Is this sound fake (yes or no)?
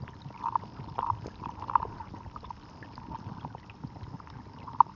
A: no